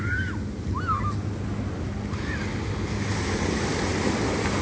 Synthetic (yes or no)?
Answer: no